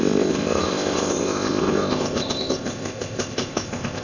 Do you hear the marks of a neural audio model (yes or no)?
yes